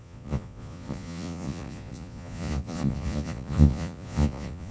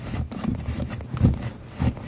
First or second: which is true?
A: second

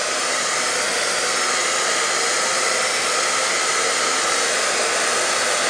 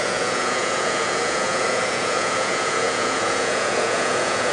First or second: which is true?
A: first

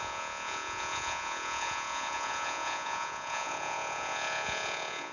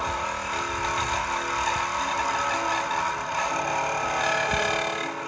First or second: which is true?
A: second